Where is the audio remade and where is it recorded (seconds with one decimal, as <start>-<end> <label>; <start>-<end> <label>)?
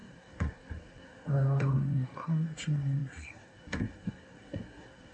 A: 0.0-5.1 remade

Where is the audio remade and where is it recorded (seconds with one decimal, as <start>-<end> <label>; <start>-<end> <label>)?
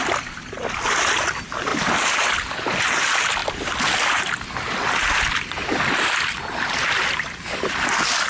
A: 0.0-8.3 recorded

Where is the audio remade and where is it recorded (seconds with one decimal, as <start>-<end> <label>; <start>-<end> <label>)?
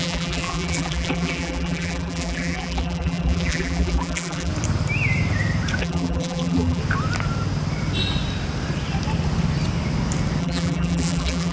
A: 0.0-4.5 remade; 4.5-5.8 recorded; 5.8-6.8 remade; 6.8-10.4 recorded; 10.4-11.5 remade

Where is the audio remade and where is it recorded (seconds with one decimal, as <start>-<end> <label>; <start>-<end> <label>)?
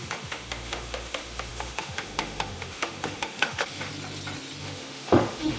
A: 0.0-3.9 remade; 3.9-4.6 recorded; 4.6-5.6 remade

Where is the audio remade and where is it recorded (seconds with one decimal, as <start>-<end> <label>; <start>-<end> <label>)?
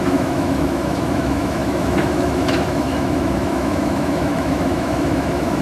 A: 0.0-5.6 remade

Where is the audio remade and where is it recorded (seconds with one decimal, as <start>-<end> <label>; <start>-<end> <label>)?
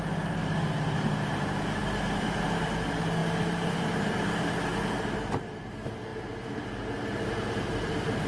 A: 0.0-0.4 remade; 0.4-1.3 recorded; 1.3-8.3 remade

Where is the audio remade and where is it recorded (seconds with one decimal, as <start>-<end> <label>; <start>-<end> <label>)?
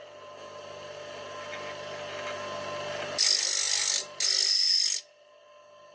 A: 0.0-5.9 recorded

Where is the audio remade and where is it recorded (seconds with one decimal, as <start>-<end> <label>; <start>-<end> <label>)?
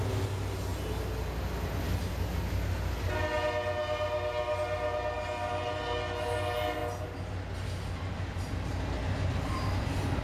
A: 0.0-10.2 recorded